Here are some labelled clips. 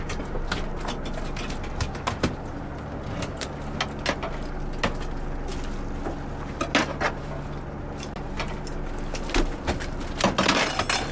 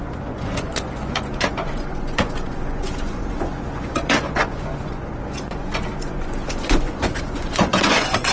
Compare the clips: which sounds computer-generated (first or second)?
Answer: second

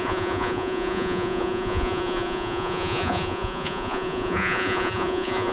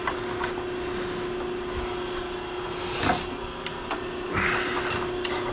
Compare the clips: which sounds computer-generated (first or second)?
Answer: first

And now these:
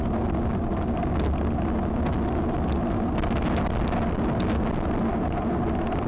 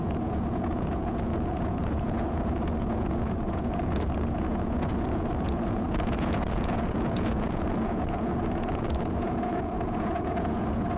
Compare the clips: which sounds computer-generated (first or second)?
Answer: second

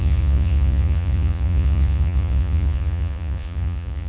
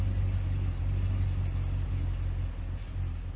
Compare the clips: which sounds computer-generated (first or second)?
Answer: first